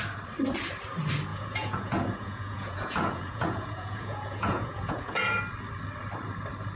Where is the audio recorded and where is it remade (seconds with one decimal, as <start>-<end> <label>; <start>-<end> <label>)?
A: 0.0-1.3 recorded; 1.3-5.4 remade; 5.4-6.8 recorded